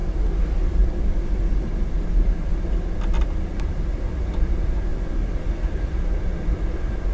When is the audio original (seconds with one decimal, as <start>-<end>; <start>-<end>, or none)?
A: 4.9-5.7